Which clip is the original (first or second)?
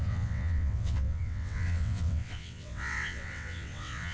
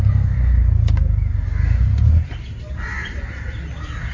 second